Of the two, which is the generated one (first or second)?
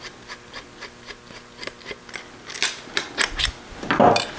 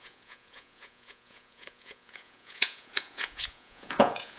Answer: second